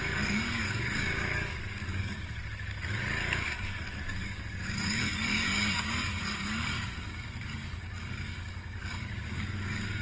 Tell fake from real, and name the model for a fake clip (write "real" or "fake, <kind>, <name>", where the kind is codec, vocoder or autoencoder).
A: fake, codec, DAC